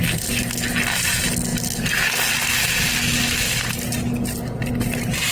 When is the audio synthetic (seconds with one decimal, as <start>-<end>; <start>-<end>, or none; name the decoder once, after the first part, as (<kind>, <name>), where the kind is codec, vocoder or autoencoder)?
none